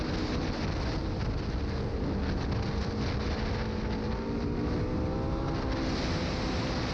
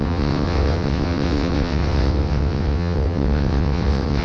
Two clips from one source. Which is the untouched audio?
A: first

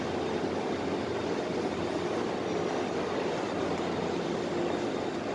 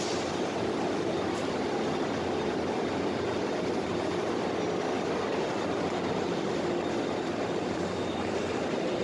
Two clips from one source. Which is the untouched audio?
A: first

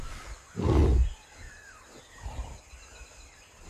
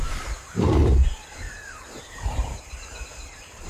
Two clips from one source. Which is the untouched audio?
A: first